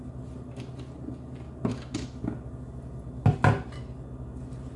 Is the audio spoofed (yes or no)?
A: no